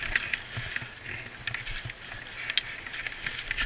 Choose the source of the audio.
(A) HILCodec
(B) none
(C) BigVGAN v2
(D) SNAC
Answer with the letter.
B